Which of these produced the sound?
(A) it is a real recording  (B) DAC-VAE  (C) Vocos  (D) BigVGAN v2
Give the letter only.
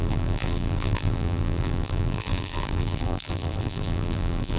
D